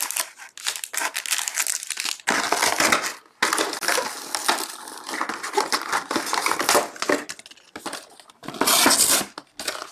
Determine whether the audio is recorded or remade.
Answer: recorded